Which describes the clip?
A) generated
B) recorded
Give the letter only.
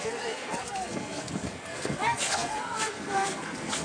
A